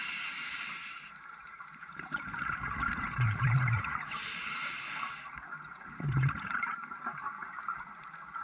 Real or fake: fake